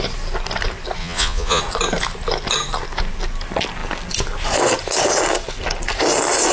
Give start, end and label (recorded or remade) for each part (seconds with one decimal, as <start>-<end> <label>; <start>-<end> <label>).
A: 0.0-1.0 recorded; 1.0-1.6 remade; 1.6-6.5 recorded